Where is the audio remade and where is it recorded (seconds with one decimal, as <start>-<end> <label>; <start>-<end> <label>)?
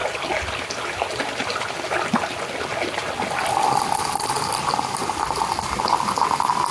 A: 0.0-6.7 recorded